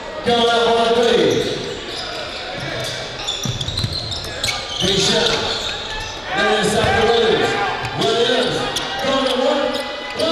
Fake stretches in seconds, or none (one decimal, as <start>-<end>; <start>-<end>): 5.1-5.7